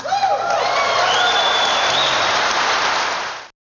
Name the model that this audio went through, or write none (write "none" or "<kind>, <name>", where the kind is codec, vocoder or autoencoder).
none